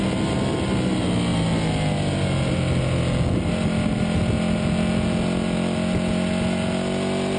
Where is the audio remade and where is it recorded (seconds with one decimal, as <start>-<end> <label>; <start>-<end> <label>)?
0.0-7.4 recorded